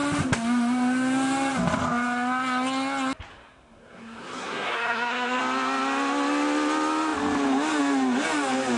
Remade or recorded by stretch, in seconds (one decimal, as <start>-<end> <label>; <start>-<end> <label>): 0.0-3.3 recorded; 3.3-5.4 remade; 5.4-8.8 recorded